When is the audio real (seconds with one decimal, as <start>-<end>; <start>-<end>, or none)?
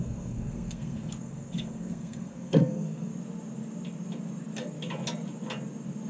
3.1-6.1